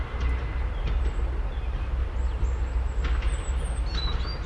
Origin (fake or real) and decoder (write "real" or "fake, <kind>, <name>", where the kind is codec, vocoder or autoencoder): real